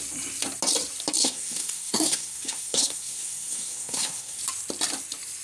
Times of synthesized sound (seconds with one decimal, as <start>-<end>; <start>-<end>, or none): 1.2-4.4